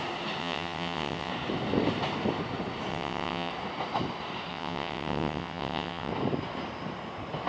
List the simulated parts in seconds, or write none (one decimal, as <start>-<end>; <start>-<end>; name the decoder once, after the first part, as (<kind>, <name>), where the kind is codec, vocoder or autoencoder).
0.4-1.3 (vocoder, WaveNeXt); 2.9-3.5; 4.5-6.1